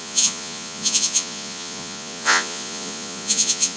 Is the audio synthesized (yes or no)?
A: yes